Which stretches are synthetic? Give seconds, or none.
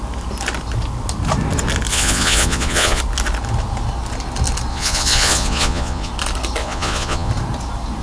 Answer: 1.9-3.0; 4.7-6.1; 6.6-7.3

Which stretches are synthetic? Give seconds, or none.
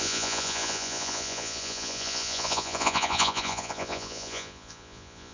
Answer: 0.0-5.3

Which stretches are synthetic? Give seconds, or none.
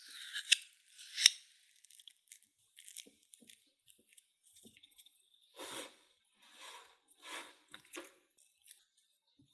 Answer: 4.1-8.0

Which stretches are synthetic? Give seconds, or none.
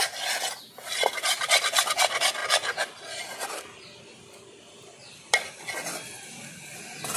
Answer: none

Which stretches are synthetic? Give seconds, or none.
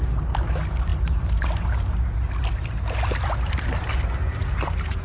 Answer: none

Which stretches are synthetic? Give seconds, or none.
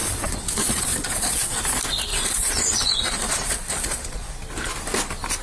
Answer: 0.0-1.6; 2.1-4.3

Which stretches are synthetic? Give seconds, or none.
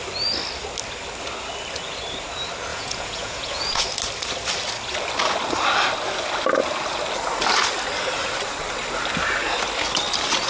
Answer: 2.7-3.9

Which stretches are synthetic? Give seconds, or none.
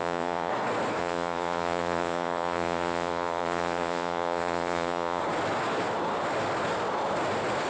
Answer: 0.0-0.5; 1.0-5.2